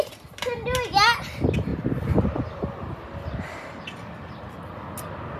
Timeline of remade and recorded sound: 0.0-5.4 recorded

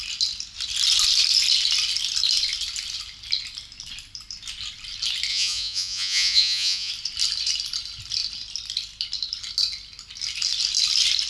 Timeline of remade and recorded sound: 0.0-5.3 recorded; 5.3-6.9 remade; 6.9-11.3 recorded

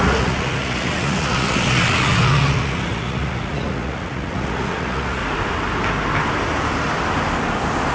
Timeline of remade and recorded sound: 0.0-5.2 remade; 5.2-7.9 recorded

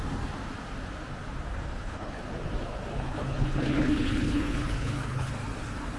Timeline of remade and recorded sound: 0.0-1.5 recorded; 1.5-2.2 remade; 2.2-2.9 recorded; 2.9-5.3 remade; 5.3-6.0 recorded

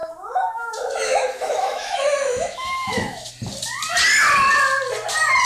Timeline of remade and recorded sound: 0.0-3.3 remade; 3.3-5.5 recorded

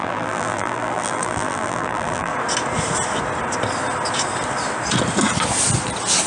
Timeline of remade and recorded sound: 0.0-2.3 remade; 2.3-6.3 recorded